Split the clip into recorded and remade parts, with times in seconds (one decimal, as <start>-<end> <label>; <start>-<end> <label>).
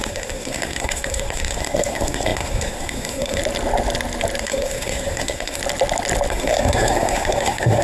0.0-3.4 remade; 3.4-4.4 recorded; 4.4-5.6 remade; 5.6-6.3 recorded; 6.3-7.8 remade